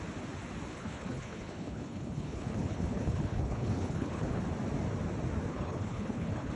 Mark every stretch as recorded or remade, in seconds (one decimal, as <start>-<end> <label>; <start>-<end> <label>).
0.0-0.7 recorded; 0.7-4.4 remade; 4.4-5.5 recorded; 5.5-6.5 remade